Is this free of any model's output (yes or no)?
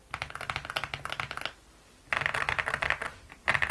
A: yes